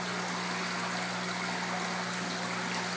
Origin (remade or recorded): recorded